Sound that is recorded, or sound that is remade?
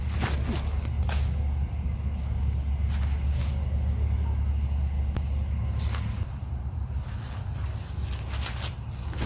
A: recorded